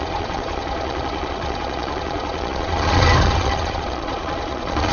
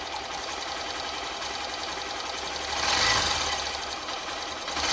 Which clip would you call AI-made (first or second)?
first